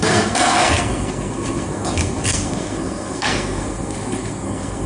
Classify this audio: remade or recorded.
remade